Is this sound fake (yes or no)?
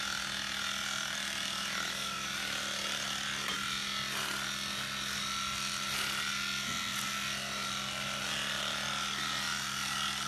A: no